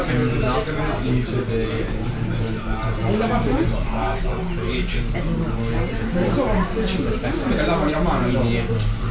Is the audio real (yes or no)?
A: yes